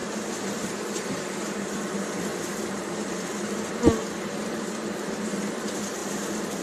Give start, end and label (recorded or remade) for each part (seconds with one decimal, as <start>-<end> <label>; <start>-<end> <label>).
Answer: 0.0-1.7 remade; 1.7-2.3 recorded; 2.3-3.1 remade; 3.1-6.0 recorded; 6.0-6.6 remade